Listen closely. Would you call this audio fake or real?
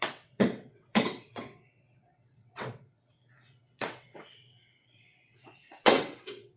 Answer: fake